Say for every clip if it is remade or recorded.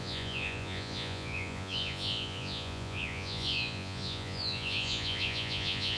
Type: remade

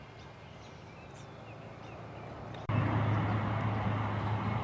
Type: recorded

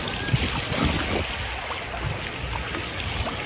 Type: recorded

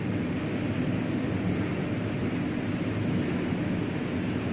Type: recorded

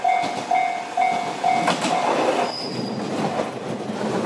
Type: recorded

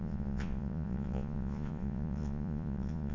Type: remade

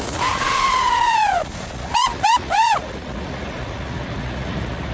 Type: remade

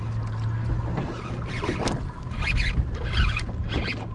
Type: recorded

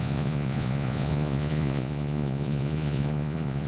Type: remade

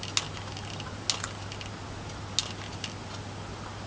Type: recorded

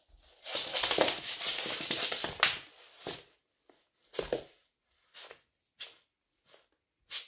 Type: recorded